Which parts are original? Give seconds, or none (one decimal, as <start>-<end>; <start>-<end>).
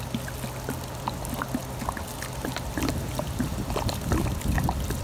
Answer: 0.0-5.0